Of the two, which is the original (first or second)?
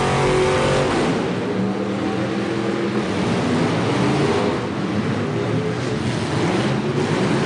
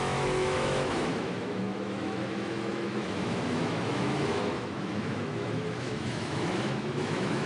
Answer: first